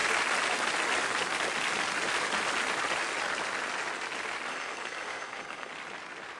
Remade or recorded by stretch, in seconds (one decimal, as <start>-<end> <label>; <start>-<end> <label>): 0.0-4.5 recorded; 4.5-5.7 remade; 5.7-6.4 recorded